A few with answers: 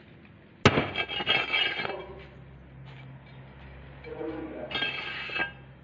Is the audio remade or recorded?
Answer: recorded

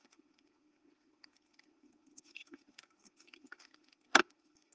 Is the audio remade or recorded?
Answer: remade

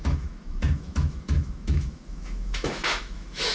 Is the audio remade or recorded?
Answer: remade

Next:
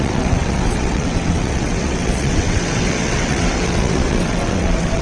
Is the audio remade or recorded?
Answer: remade